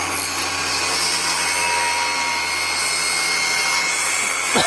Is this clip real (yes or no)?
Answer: yes